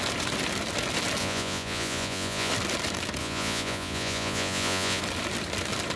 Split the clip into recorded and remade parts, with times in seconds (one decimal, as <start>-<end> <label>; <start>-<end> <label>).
0.0-1.2 recorded; 1.2-2.5 remade; 2.5-3.2 recorded; 3.2-5.0 remade; 5.0-6.0 recorded